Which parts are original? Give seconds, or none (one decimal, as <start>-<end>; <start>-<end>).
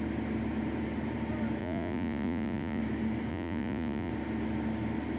0.0-1.6; 2.8-3.3; 4.1-5.2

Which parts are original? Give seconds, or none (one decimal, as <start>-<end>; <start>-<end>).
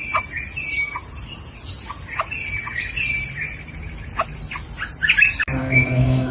0.0-5.6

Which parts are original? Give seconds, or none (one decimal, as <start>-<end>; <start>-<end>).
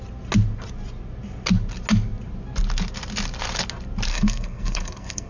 0.0-4.1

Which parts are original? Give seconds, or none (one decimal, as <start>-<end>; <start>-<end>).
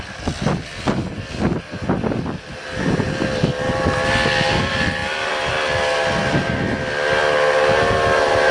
0.0-8.5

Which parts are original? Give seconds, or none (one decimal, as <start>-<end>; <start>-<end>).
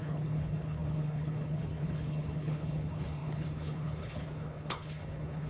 none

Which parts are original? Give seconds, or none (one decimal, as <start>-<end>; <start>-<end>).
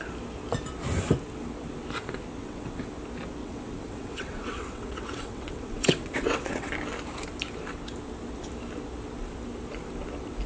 0.0-2.4; 2.9-3.4; 6.7-10.5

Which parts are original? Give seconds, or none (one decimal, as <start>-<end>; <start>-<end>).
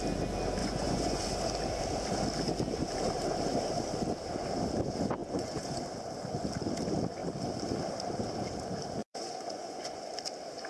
0.0-0.6; 1.2-5.2; 5.8-9.0; 10.1-10.7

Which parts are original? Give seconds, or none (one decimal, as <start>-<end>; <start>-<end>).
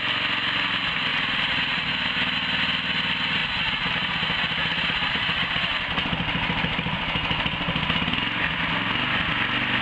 0.0-1.1; 1.9-3.4; 3.9-4.6; 5.5-9.8